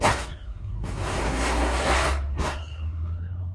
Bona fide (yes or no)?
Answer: no